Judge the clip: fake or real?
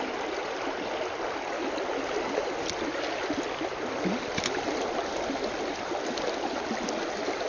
real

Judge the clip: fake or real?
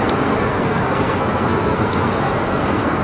fake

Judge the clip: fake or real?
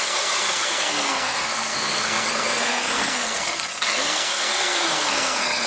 fake